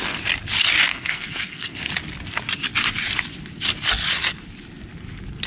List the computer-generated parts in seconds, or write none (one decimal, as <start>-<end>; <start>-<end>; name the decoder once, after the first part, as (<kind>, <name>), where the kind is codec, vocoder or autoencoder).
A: 0.9-1.9 (codec, SNAC)